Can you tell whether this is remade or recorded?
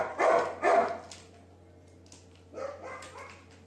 recorded